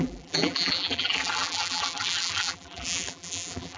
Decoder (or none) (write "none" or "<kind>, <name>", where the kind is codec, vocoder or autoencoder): vocoder, BigVGAN v2